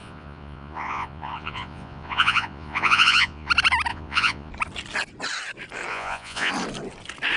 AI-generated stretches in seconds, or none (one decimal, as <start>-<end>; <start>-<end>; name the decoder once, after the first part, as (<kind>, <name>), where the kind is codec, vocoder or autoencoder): 0.0-3.5 (vocoder, Vocos); 3.9-4.5; 5.9-6.5